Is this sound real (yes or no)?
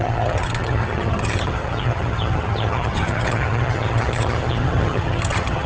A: no